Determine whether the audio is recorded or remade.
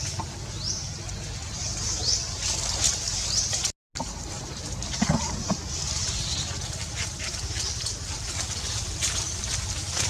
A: recorded